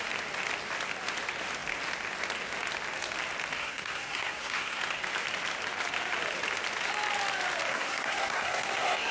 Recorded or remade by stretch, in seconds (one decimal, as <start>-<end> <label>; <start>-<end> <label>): 0.0-3.6 recorded; 3.6-4.8 remade; 4.8-7.7 recorded; 7.7-9.1 remade